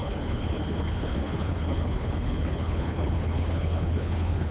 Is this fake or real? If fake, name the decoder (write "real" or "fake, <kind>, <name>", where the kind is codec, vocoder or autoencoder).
fake, codec, HILCodec